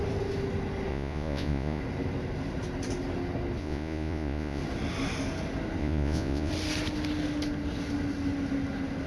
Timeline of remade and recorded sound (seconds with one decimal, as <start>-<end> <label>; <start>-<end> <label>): 0.0-0.9 recorded; 0.9-1.8 remade; 1.8-3.6 recorded; 3.6-4.6 remade; 4.6-5.8 recorded; 5.8-6.5 remade; 6.5-9.1 recorded